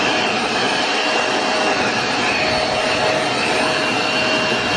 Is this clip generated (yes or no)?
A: no